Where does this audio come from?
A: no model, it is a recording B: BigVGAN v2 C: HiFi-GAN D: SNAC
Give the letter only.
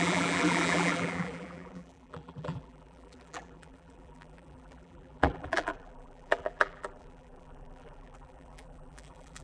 B